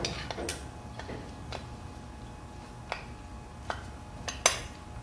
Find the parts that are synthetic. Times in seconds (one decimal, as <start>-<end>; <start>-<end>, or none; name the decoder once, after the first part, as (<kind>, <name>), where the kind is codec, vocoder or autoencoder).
none